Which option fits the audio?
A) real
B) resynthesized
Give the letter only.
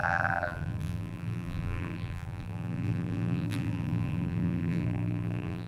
B